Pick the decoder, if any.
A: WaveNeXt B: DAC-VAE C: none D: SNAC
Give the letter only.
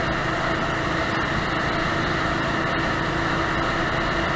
C